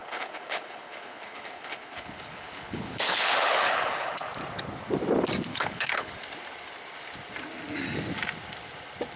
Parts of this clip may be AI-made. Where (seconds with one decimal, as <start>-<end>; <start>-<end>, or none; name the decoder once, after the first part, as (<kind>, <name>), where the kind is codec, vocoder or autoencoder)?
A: 0.0-4.3 (codec, HILCodec); 5.5-6.1